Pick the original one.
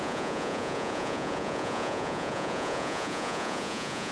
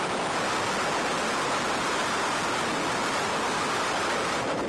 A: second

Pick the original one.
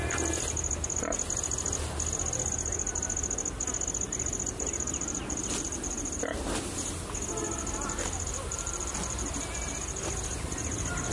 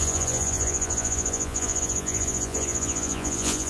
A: first